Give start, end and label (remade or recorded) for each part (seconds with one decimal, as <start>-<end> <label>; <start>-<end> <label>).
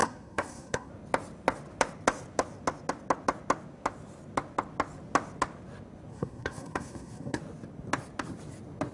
0.0-0.9 remade; 0.9-6.1 recorded; 6.1-7.4 remade; 7.4-8.9 recorded